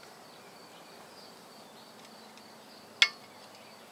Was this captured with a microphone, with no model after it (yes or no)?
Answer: yes